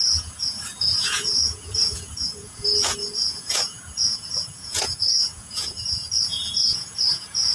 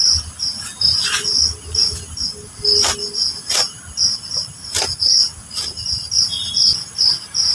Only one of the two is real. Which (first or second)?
second